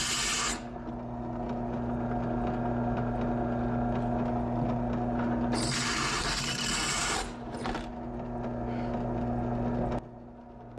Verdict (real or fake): real